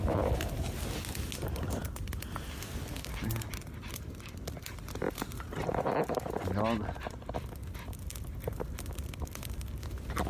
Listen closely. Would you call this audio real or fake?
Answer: real